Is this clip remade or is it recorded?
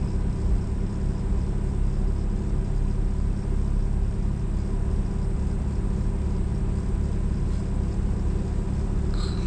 recorded